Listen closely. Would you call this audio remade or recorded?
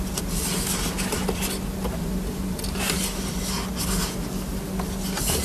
recorded